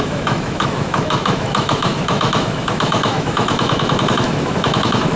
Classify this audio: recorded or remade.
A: remade